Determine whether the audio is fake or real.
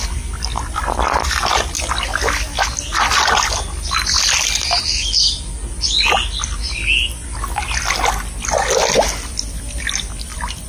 real